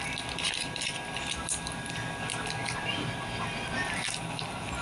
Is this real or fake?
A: real